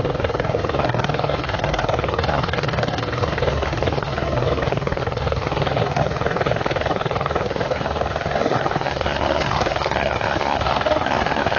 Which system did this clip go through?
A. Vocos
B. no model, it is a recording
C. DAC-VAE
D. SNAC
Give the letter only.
D